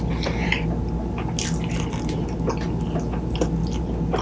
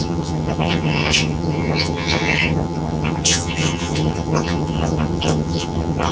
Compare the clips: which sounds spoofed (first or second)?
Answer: second